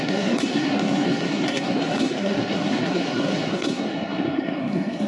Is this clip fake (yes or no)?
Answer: yes